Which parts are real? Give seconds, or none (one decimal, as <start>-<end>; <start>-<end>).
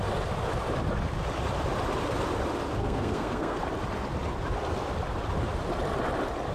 0.0-2.8; 3.6-6.5